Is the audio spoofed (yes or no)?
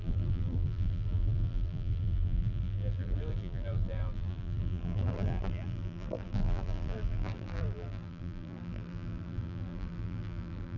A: yes